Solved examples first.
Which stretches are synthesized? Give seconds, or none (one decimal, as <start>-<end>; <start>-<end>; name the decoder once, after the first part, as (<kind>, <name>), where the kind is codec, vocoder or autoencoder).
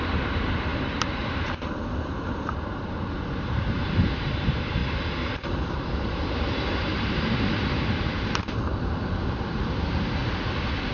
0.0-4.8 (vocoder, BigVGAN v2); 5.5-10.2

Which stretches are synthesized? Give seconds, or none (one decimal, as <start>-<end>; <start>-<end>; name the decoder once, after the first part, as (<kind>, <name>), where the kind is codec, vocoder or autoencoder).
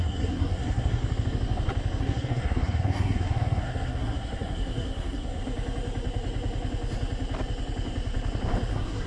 0.0-1.0 (codec, SNAC); 2.0-5.4; 8.7-9.1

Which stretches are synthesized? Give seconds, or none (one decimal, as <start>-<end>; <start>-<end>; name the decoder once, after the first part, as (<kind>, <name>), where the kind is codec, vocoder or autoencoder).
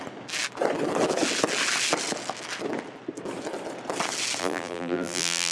4.4-5.5 (vocoder, BigVGAN v2)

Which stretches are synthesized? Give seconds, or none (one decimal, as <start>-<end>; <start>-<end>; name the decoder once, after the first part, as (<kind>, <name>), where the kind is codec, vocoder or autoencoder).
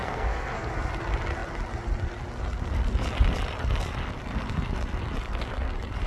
0.0-0.7 (codec, SNAC)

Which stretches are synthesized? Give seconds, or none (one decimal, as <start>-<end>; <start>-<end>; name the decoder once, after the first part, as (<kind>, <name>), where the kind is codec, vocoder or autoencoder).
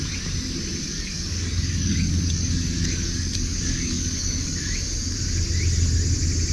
0.8-4.7 (codec, DAC)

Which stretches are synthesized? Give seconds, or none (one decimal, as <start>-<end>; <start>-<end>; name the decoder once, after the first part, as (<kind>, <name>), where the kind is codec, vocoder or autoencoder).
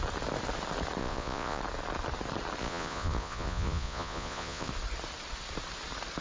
1.0-1.6 (vocoder, Vocos); 2.6-4.7